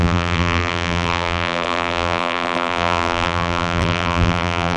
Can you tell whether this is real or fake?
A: fake